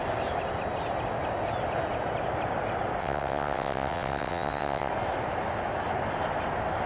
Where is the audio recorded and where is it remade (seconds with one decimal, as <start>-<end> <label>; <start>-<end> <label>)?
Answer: 0.0-3.0 recorded; 3.0-4.9 remade; 4.9-6.9 recorded